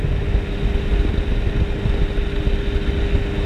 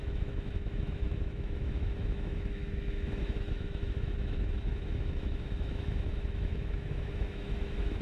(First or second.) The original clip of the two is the first